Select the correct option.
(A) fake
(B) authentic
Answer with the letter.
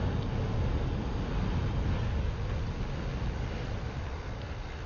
B